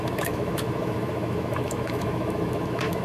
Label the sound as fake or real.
fake